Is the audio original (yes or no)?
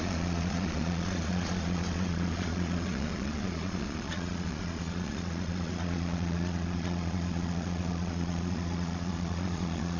no